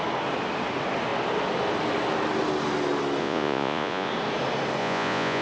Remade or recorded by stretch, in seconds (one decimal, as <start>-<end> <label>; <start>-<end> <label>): 0.0-3.2 recorded; 3.2-4.1 remade; 4.1-4.8 recorded; 4.8-5.4 remade